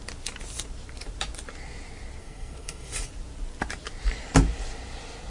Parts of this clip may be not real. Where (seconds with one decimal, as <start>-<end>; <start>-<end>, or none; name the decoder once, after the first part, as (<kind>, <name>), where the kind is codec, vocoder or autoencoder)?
2.2-3.1 (codec, SNAC)